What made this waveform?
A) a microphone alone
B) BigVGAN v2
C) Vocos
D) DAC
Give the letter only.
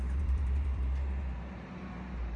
B